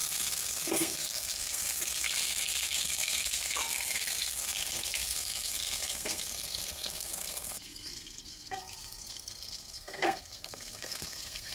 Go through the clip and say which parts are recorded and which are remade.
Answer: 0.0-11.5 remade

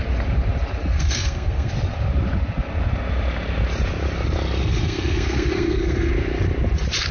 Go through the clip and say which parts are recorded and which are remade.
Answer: 0.0-0.8 recorded; 0.8-1.7 remade; 1.7-4.6 recorded; 4.6-6.1 remade; 6.1-7.1 recorded

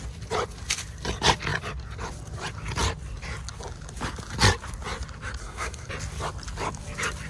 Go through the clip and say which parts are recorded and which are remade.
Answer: 0.0-5.4 recorded; 5.4-5.9 remade; 5.9-7.3 recorded